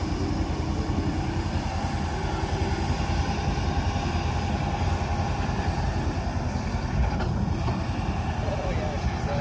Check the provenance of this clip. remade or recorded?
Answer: recorded